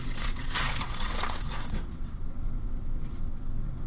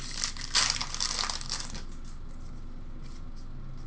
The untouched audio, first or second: second